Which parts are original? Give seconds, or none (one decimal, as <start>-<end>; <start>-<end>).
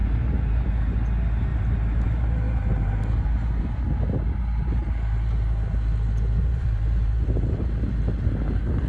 0.7-1.5; 3.6-6.4; 7.9-8.9